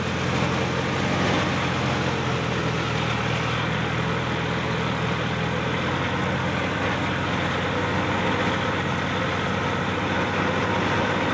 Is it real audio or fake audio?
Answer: real